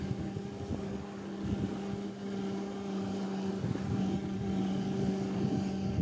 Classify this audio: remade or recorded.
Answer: remade